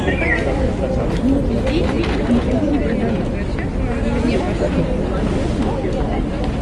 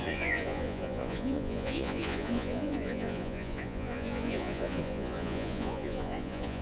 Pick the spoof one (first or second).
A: second